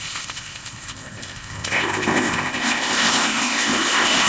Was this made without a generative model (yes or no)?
no